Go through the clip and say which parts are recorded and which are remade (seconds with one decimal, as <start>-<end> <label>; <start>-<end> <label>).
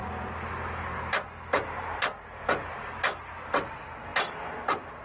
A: 0.0-5.0 recorded